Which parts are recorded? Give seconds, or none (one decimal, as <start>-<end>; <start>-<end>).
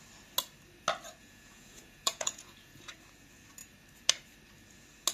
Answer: 0.0-1.2; 2.9-5.1